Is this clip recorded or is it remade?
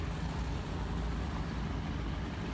recorded